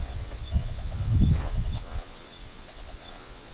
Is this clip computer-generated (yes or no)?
yes